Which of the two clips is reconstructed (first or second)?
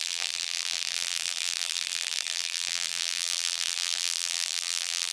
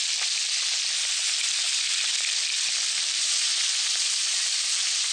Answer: first